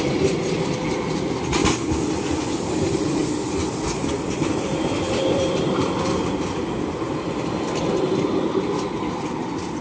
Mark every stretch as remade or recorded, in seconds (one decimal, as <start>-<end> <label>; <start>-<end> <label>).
0.0-1.6 remade; 1.6-2.4 recorded; 2.4-3.2 remade; 3.2-4.3 recorded; 4.3-9.8 remade